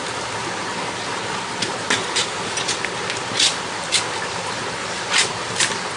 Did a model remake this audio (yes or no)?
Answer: no